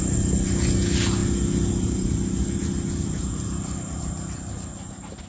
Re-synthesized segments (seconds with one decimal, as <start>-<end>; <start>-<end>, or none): none